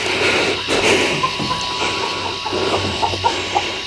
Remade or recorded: recorded